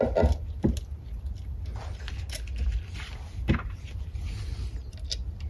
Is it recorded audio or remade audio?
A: recorded